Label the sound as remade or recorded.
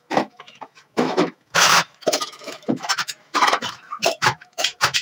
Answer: remade